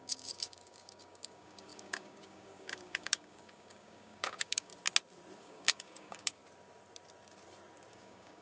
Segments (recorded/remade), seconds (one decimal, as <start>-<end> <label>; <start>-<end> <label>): 0.0-4.7 remade; 4.7-5.4 recorded; 5.4-6.4 remade; 6.4-7.9 recorded; 7.9-8.4 remade